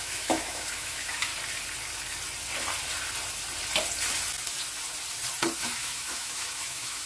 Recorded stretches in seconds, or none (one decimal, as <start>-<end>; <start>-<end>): 1.3-5.6

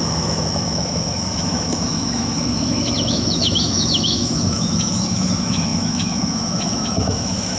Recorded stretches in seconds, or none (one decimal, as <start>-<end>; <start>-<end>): none

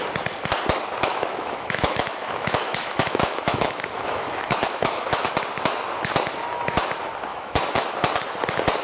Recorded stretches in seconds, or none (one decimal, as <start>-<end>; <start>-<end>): 0.0-1.1; 5.3-7.3; 7.9-8.8

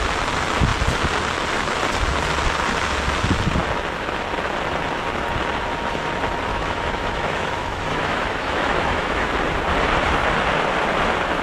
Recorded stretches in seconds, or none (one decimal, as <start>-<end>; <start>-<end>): 0.0-6.5; 9.3-11.4

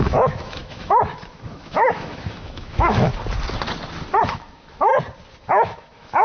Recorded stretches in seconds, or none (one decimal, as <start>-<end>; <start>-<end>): 3.1-4.2; 4.9-5.4